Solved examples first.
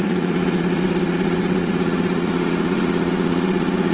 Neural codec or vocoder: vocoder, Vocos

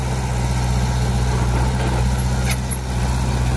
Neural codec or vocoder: none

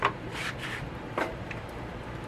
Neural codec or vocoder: vocoder, BigVGAN v2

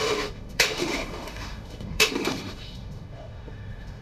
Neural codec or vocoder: autoencoder, DAC-VAE